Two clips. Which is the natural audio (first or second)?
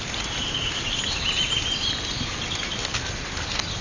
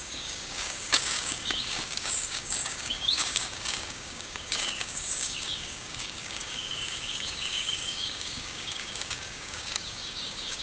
first